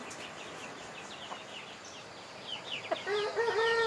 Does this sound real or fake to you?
real